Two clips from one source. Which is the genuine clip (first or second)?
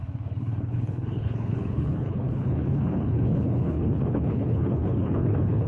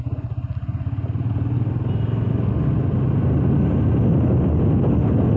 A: second